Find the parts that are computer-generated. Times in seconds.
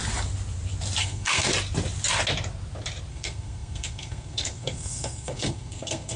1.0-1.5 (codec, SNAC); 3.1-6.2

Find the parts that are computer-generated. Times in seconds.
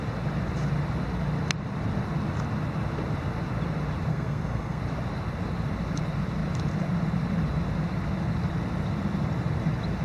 4.1-4.8 (codec, SNAC)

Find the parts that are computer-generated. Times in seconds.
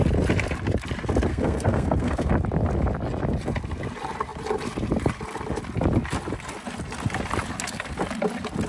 1.3-2.3 (codec, SNAC)